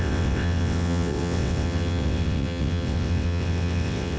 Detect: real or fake fake